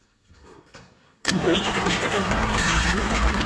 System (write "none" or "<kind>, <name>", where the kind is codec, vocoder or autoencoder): codec, SNAC